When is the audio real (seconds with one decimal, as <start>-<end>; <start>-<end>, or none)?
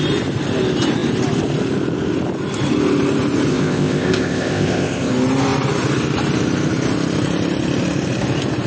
0.0-3.5; 5.1-8.7